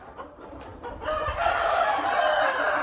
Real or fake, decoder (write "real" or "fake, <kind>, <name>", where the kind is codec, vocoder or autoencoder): fake, vocoder, BigVGAN v2